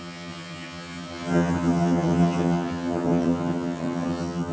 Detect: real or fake fake